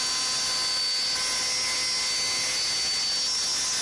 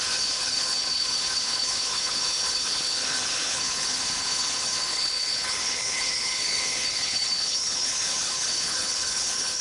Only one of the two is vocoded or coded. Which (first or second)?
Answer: second